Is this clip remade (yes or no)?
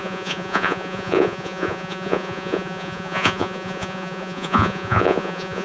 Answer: yes